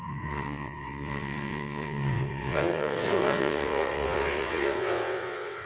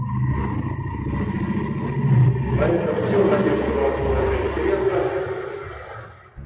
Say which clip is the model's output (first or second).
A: first